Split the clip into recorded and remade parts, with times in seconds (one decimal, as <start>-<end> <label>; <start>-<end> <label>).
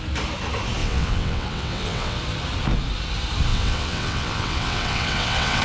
0.0-0.8 recorded; 0.8-2.2 remade; 2.2-3.5 recorded; 3.5-5.6 remade